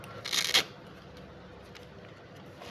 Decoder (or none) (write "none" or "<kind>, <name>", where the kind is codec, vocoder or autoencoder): none